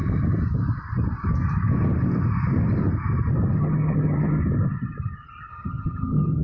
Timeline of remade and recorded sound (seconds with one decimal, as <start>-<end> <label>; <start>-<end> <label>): 0.0-3.6 recorded; 3.6-4.4 remade; 4.4-5.5 recorded; 5.5-6.4 remade